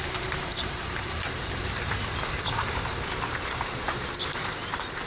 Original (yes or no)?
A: no